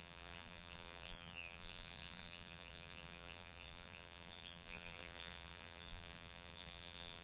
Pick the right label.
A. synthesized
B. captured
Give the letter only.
A